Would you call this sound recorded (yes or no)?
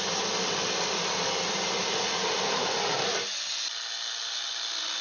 yes